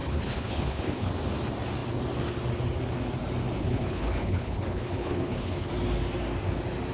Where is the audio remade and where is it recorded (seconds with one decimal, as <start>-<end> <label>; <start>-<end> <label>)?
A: 0.0-1.1 remade; 1.1-3.6 recorded; 3.6-5.7 remade; 5.7-6.9 recorded